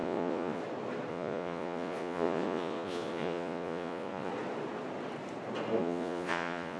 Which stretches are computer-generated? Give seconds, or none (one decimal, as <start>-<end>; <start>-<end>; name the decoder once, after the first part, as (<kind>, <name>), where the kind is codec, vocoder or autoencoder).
0.0-0.6 (vocoder, Vocos); 1.1-4.3; 5.8-6.8